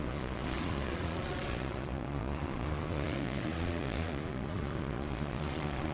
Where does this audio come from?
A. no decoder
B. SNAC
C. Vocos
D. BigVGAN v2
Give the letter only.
C